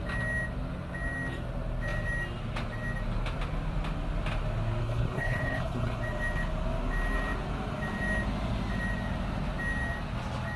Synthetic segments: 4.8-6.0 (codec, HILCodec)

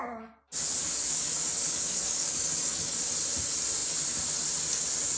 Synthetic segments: 0.8-3.0 (codec, DAC)

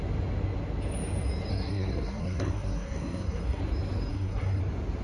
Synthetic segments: 1.5-3.6 (codec, SNAC); 4.1-4.6

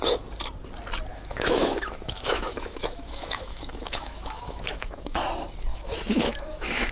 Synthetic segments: 1.1-5.2 (autoencoder, DAC-VAE); 5.7-6.9

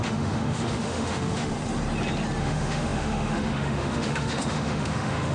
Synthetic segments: 0.0-1.5 (autoencoder, DAC-VAE); 2.4-5.3

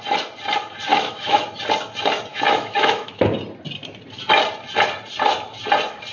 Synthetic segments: 0.9-1.4 (autoencoder, DAC-VAE); 2.3-3.2

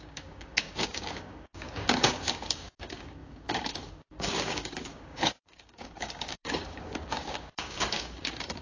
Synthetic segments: 0.0-8.6 (codec, DAC)